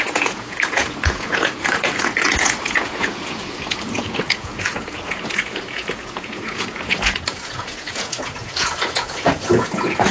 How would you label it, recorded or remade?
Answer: remade